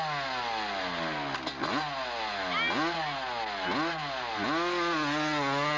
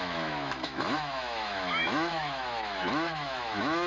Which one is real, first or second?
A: first